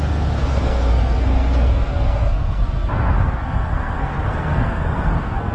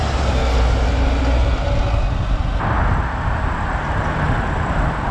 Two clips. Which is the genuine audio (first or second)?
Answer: second